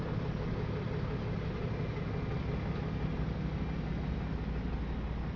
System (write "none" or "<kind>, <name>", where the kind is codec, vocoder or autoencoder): none